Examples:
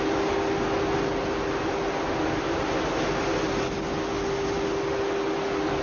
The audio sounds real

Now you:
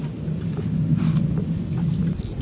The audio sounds real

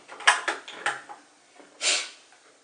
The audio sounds real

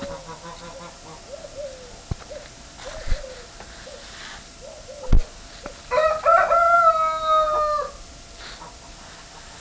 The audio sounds real